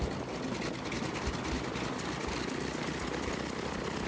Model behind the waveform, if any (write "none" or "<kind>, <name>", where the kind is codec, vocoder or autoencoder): none